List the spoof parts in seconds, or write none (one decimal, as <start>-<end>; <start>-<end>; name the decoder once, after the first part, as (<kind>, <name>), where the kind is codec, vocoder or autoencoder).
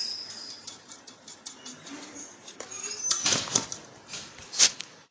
0.0-3.2 (vocoder, BigVGAN v2); 4.6-5.1